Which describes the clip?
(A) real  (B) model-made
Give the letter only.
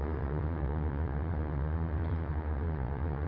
B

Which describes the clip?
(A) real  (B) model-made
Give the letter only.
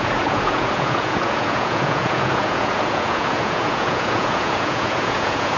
B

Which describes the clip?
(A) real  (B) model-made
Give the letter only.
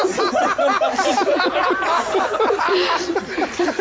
A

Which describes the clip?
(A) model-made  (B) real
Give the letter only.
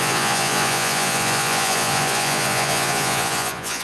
A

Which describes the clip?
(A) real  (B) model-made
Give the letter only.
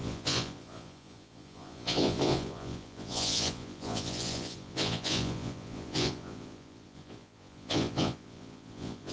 B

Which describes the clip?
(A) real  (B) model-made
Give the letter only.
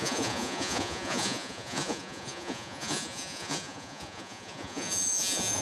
B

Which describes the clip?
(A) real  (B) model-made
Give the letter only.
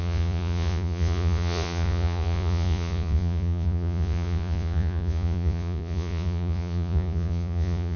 B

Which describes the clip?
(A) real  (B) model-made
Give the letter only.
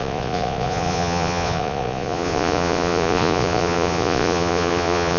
B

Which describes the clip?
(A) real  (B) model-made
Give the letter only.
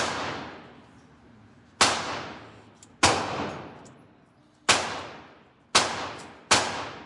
A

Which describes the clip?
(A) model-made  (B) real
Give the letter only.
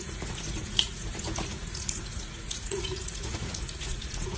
A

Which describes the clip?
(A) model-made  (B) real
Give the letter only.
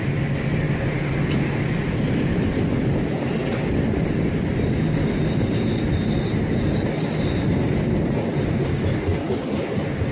B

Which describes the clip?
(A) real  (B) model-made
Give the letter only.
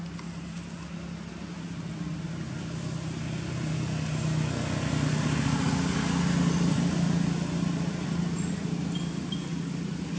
A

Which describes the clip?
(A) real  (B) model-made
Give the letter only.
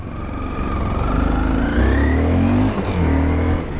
A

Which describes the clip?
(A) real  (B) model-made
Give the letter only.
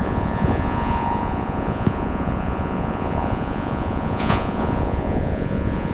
B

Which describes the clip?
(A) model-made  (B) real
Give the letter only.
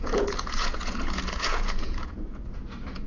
A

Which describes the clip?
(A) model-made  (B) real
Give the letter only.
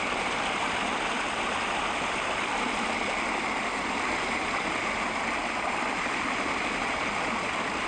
B